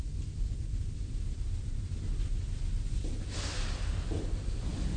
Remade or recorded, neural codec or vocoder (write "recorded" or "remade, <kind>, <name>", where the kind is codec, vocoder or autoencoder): recorded